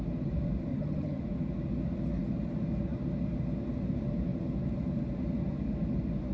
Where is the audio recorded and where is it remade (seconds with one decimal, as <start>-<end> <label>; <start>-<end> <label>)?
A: 0.0-0.7 recorded; 0.7-1.2 remade; 1.2-6.3 recorded